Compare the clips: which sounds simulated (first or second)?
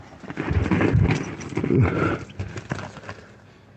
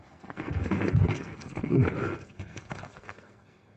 second